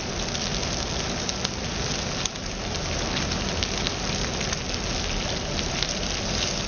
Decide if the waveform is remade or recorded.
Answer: recorded